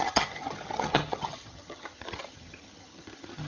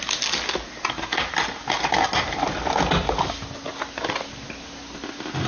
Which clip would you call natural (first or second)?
second